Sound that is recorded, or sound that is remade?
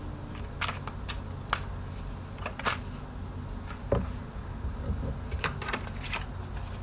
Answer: recorded